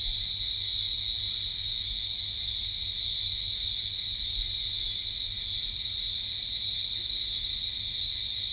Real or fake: real